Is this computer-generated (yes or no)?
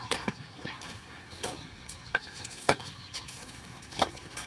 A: yes